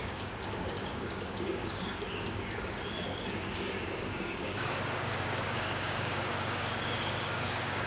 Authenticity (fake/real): fake